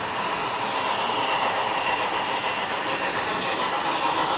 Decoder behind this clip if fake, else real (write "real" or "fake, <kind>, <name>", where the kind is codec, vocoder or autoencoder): real